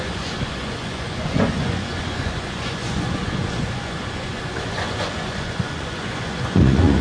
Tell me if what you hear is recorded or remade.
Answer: remade